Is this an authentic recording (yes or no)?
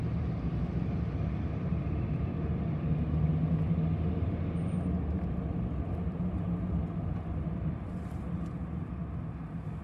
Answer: yes